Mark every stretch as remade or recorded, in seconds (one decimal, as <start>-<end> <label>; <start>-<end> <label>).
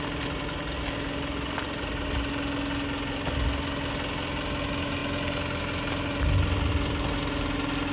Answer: 0.0-7.9 recorded